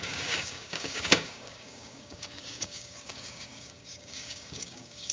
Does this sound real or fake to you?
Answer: fake